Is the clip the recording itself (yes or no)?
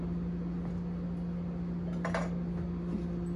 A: yes